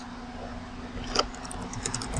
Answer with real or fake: real